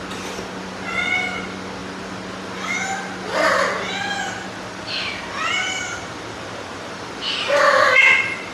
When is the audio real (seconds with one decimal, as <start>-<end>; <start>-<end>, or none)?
0.0-8.5